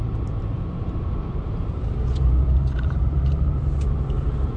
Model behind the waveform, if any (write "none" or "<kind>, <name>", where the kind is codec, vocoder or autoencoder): vocoder, BigVGAN v2